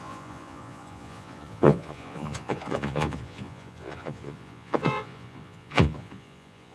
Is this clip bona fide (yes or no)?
no